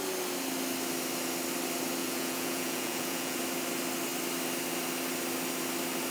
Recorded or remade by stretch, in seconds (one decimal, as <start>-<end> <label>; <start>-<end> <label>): 0.0-2.0 recorded; 2.0-3.4 remade; 3.4-6.1 recorded